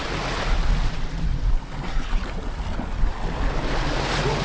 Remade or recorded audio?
recorded